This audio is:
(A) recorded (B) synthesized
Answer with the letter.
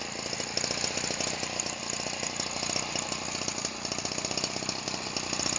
A